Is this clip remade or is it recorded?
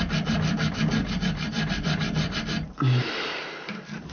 recorded